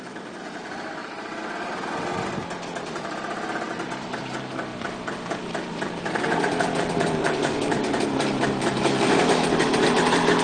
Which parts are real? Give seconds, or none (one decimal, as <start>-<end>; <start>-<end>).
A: 0.0-10.4